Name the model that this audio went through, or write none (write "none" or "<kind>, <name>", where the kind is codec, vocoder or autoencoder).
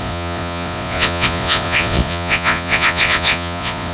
vocoder, Vocos